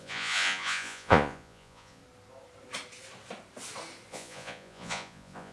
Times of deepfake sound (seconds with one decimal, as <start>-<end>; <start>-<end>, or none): 0.0-2.0; 4.1-5.5